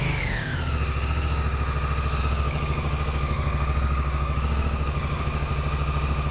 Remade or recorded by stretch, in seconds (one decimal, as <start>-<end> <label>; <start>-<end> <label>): 0.0-0.5 remade; 0.5-2.2 recorded; 2.2-5.5 remade; 5.5-6.3 recorded